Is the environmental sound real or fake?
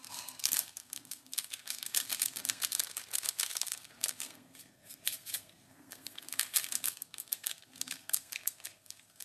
fake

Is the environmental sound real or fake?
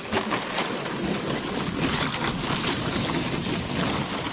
real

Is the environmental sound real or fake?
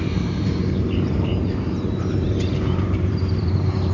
fake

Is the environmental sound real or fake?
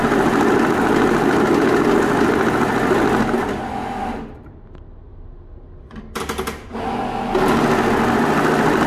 real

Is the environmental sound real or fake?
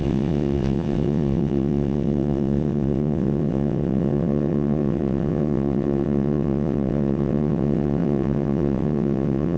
fake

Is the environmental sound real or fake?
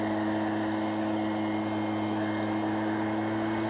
real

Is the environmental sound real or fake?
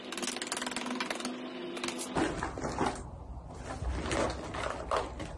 real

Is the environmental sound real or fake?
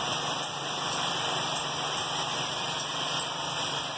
real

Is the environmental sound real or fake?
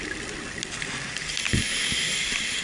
real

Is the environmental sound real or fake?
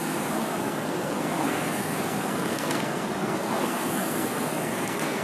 fake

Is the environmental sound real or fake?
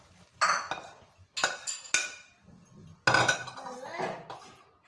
real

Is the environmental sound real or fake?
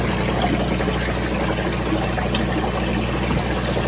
real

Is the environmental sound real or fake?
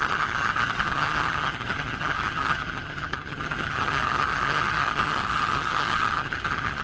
fake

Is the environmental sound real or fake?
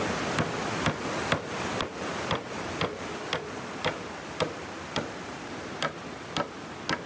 real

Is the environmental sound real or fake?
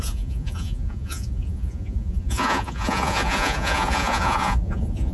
fake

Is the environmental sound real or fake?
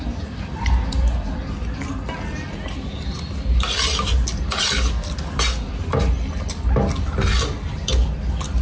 real